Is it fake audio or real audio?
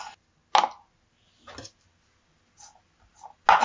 real